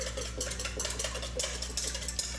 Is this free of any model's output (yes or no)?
yes